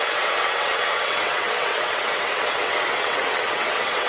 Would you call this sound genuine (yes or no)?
no